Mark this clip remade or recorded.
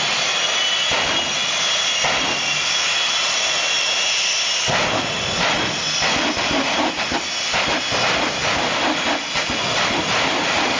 recorded